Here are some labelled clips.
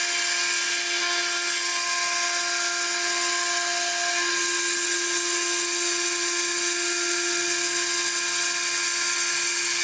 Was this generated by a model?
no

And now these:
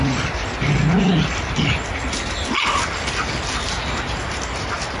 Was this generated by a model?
no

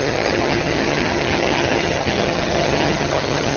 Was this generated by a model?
yes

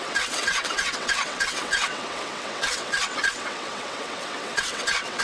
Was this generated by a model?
yes